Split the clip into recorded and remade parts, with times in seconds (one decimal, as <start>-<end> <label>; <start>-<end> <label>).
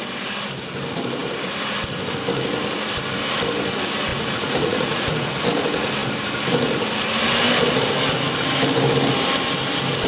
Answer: 0.0-4.1 recorded; 4.1-5.3 remade; 5.3-10.1 recorded